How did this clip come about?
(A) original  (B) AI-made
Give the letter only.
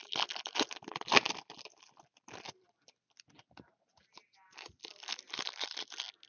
A